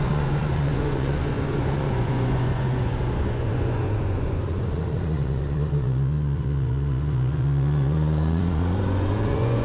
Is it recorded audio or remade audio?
remade